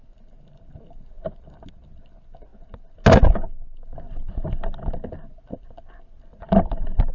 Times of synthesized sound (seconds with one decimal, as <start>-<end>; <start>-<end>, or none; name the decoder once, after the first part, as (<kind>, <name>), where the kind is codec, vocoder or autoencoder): none